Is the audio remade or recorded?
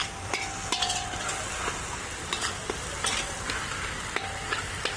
recorded